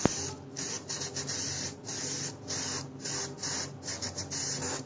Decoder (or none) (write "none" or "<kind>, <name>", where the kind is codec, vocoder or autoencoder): none